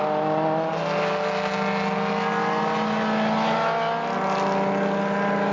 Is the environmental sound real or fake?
real